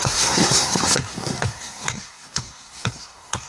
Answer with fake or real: fake